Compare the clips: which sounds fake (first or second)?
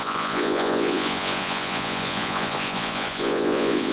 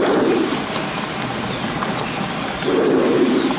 first